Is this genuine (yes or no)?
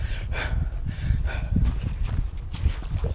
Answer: yes